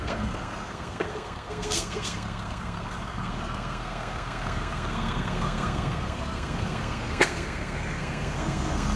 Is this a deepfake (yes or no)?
yes